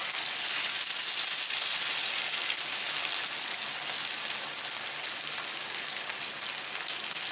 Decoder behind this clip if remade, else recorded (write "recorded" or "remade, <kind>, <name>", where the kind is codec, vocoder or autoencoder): recorded